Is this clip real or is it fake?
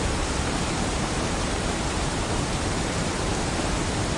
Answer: fake